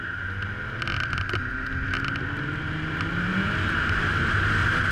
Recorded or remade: recorded